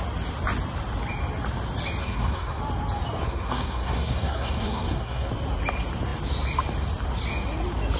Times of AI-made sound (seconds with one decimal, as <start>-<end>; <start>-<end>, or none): 2.0-2.6; 3.2-5.3